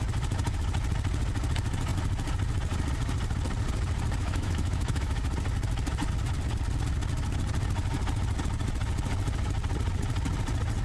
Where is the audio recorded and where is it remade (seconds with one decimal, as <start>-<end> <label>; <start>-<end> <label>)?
0.0-4.2 recorded; 4.2-5.2 remade; 5.2-10.8 recorded